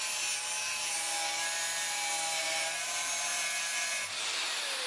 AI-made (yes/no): no